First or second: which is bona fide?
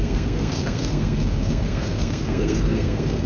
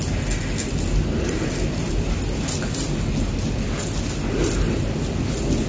second